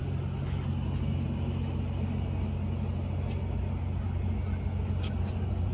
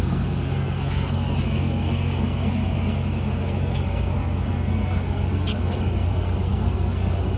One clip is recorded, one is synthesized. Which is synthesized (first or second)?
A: second